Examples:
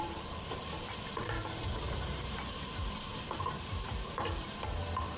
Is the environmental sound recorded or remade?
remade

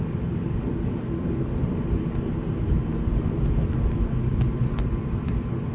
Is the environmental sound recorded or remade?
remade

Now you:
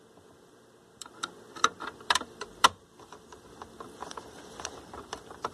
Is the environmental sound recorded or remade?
remade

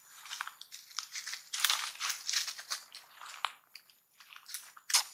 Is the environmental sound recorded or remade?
recorded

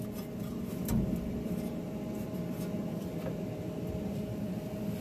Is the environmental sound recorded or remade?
remade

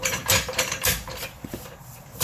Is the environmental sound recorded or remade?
remade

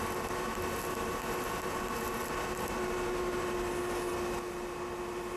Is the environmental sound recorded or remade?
recorded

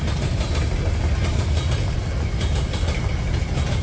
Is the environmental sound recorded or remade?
recorded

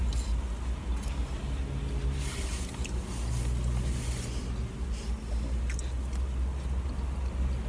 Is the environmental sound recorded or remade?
recorded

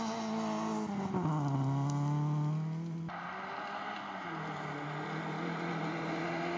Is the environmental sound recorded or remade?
recorded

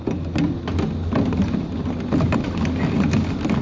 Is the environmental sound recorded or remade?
recorded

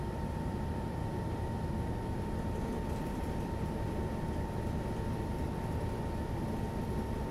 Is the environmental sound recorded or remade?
remade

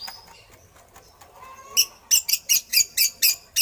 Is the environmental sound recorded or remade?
recorded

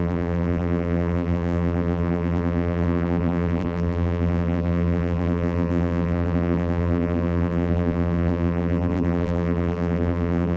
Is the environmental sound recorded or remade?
remade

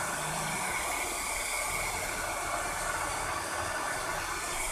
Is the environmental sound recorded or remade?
recorded